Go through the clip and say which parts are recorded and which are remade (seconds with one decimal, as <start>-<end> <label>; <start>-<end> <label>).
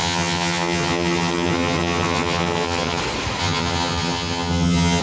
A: 0.0-3.0 remade; 3.0-3.4 recorded; 3.4-5.0 remade